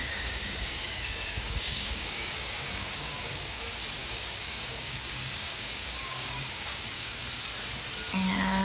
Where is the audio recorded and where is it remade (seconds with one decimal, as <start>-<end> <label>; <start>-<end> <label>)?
0.0-3.6 remade; 3.6-4.0 recorded; 4.0-7.2 remade; 7.2-8.6 recorded